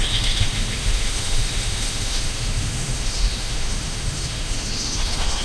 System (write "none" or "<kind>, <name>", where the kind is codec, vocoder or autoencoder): autoencoder, DAC-VAE